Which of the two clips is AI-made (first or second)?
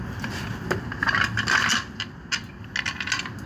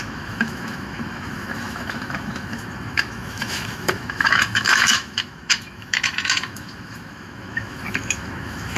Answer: second